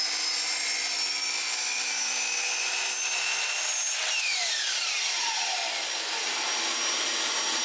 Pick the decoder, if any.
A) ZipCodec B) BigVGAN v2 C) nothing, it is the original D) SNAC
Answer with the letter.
C